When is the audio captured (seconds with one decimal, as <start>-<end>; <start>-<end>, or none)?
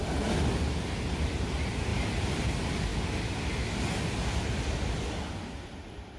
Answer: 0.0-1.9; 2.5-6.2